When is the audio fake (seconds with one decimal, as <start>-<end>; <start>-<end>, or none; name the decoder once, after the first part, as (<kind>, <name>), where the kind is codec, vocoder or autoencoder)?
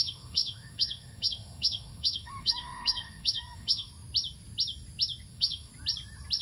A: 0.0-3.9 (autoencoder, DAC-VAE); 5.3-5.7